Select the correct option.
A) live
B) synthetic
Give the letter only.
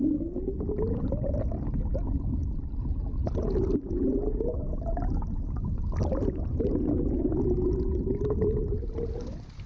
A